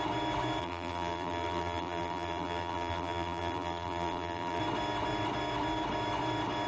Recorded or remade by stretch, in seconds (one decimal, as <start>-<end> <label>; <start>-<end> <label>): 0.0-0.6 recorded; 0.6-4.6 remade; 4.6-6.7 recorded